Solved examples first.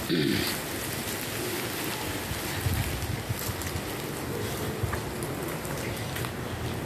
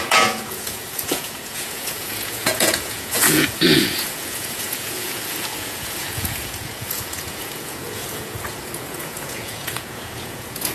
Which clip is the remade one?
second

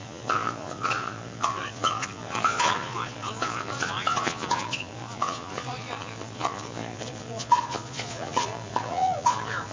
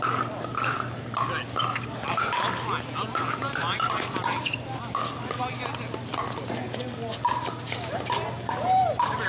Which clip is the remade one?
first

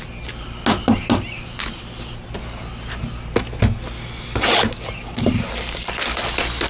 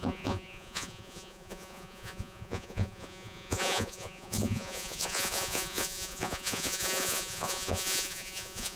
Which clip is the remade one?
second